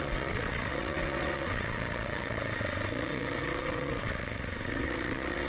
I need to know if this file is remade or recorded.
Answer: remade